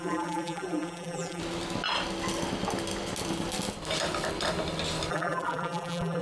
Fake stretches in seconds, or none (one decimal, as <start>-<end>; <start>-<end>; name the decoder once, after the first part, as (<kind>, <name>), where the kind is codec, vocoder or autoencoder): 0.0-1.4 (vocoder, BigVGAN v2); 5.1-6.2